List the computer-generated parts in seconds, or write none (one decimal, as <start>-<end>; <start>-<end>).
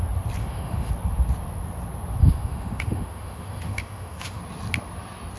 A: 0.4-0.9; 2.2-4.4